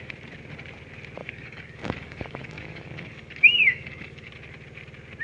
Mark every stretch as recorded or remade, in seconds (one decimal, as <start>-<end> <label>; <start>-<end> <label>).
0.0-1.2 recorded; 1.2-4.3 remade; 4.3-5.2 recorded